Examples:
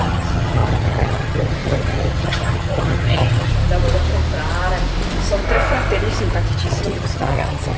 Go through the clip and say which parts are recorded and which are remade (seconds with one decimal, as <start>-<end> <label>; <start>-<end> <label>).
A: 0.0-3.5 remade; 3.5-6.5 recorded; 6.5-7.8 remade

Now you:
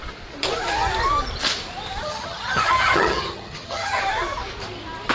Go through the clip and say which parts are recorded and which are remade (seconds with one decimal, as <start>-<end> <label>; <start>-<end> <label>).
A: 0.0-2.0 recorded; 2.0-4.0 remade; 4.0-5.1 recorded

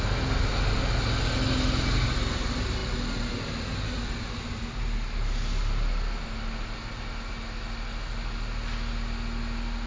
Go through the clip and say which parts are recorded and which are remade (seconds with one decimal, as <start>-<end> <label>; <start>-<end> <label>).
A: 0.0-9.9 recorded